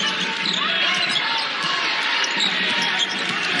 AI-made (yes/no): yes